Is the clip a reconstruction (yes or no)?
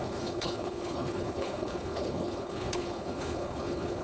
yes